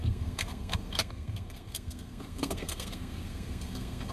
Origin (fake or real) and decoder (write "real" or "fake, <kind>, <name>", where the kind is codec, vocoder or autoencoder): fake, codec, SNAC